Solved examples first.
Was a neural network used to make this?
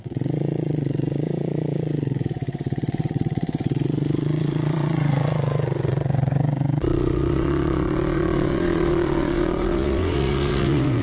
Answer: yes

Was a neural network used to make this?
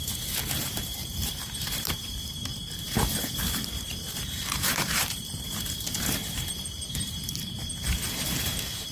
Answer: yes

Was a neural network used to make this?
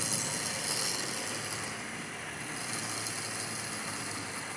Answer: no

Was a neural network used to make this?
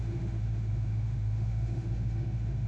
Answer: yes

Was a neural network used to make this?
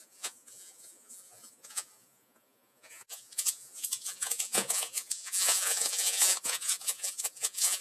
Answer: yes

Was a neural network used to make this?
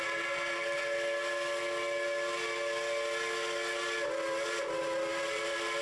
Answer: no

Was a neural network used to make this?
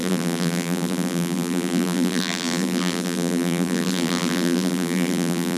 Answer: yes